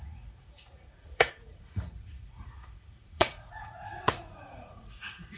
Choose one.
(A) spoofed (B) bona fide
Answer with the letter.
A